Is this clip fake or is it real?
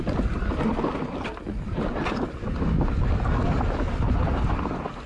real